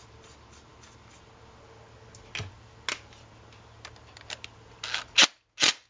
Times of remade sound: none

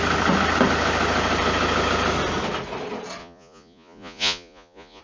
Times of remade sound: 3.2-5.0 (vocoder, Vocos)

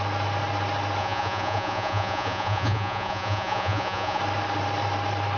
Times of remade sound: 1.0-4.2 (vocoder, Vocos)

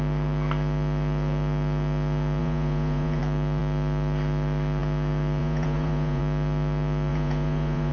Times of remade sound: 2.4-3.2 (vocoder, Vocos); 5.4-6.2; 7.1-7.9

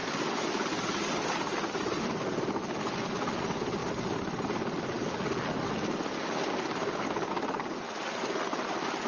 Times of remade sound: none